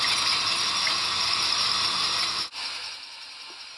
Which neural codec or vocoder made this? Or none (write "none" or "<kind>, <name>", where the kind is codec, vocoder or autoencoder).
none